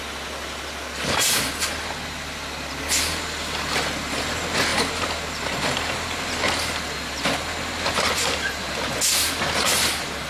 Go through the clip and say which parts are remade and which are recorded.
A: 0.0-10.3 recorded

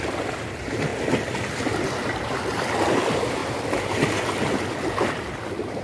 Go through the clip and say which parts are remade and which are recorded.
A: 0.0-0.9 remade; 0.9-1.8 recorded; 1.8-3.4 remade; 3.4-4.2 recorded; 4.2-5.8 remade

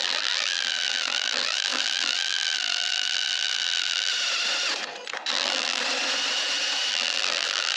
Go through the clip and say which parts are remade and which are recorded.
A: 0.0-4.1 remade; 4.1-5.3 recorded; 5.3-5.8 remade; 5.8-6.9 recorded; 6.9-7.8 remade

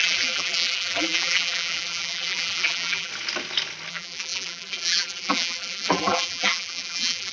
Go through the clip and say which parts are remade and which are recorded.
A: 0.0-3.1 remade; 3.1-3.9 recorded; 3.9-7.3 remade

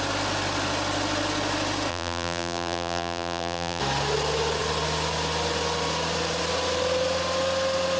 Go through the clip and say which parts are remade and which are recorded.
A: 0.0-1.9 recorded; 1.9-3.8 remade; 3.8-8.0 recorded

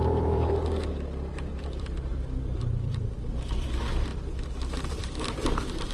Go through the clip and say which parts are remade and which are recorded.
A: 0.0-2.1 remade; 2.1-2.6 recorded; 2.6-4.1 remade; 4.1-4.9 recorded; 4.9-5.9 remade

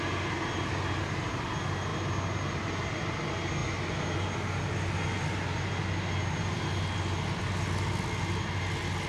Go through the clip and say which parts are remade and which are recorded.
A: 0.0-9.1 recorded